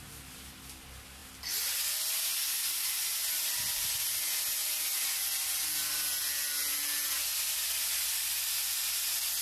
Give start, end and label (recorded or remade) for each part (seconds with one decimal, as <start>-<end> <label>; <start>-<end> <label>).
0.0-9.4 recorded